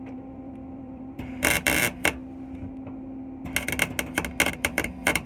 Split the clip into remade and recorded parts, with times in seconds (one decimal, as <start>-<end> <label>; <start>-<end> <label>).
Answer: 0.0-2.2 remade; 2.2-4.5 recorded; 4.5-5.3 remade